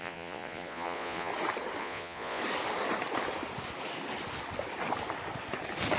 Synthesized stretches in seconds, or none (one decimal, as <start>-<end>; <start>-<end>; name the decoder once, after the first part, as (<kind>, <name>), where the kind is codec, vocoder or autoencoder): 0.0-1.3 (vocoder, Vocos); 1.8-2.4